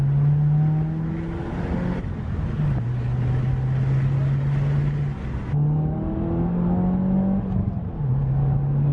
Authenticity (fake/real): real